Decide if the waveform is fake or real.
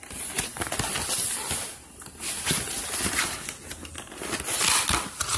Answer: real